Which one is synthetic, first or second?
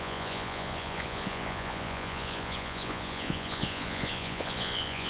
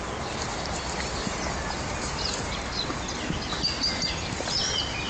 first